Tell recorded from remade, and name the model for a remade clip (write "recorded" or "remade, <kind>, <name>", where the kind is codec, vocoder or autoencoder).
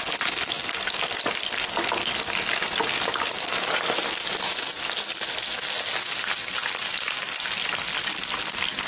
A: recorded